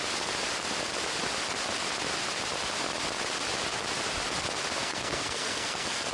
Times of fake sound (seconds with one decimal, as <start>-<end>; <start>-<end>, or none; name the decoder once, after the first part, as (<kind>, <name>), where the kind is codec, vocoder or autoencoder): 4.8-6.1 (codec, SNAC)